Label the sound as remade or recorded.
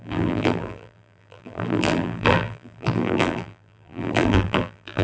remade